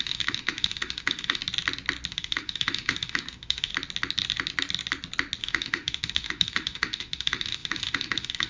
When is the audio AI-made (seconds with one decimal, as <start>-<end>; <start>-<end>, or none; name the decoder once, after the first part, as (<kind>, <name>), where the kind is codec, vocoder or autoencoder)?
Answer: 0.0-1.4 (autoencoder, DAC-VAE); 2.1-3.7; 5.4-8.5

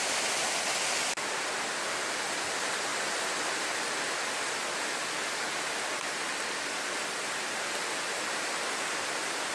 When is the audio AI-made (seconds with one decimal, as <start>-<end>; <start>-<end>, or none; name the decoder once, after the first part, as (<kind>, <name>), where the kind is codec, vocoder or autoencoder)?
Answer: none